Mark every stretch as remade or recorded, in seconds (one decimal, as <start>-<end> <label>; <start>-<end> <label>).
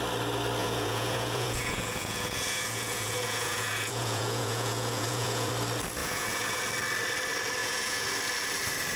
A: 0.0-0.6 recorded; 0.6-5.5 remade; 5.5-6.0 recorded; 6.0-6.7 remade; 6.7-7.6 recorded; 7.6-8.1 remade; 8.1-9.0 recorded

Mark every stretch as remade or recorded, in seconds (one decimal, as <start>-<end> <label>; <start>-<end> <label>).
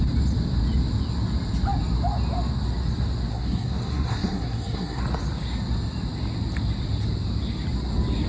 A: 0.0-3.3 recorded; 3.3-5.0 remade; 5.0-8.3 recorded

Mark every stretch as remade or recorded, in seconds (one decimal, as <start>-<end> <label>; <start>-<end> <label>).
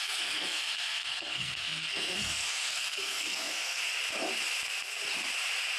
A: 0.0-3.9 remade; 3.9-5.8 recorded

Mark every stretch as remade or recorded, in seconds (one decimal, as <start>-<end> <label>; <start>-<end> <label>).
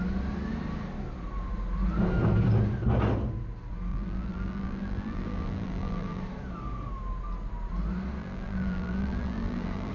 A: 0.0-3.9 recorded; 3.9-6.2 remade; 6.2-8.2 recorded; 8.2-9.9 remade